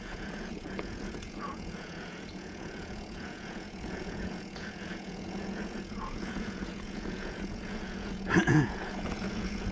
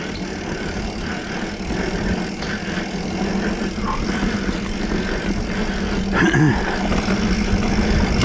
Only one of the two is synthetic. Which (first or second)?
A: first